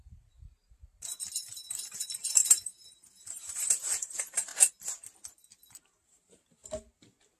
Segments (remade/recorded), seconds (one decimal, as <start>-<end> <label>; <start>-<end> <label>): 0.0-4.5 remade; 4.5-5.8 recorded; 5.8-6.6 remade; 6.6-7.4 recorded